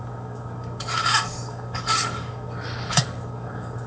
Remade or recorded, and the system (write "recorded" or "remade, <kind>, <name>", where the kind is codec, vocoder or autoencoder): remade, codec, DAC